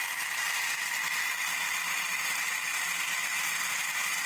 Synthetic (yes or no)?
no